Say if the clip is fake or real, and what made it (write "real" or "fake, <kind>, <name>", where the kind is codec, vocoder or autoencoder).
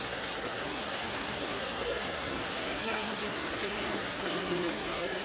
fake, codec, SNAC